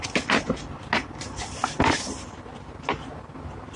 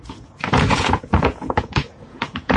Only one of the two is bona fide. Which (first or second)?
first